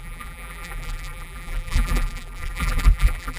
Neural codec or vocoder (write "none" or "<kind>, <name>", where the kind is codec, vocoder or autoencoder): vocoder, BigVGAN v2